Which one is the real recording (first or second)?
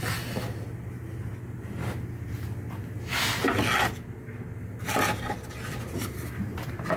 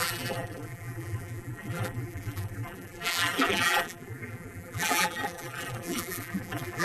first